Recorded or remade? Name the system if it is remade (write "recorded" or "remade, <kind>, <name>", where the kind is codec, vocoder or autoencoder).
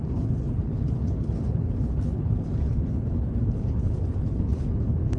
remade, codec, HILCodec